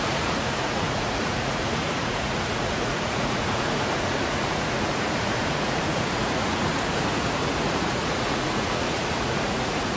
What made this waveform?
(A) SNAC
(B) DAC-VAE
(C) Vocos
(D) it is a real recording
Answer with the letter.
C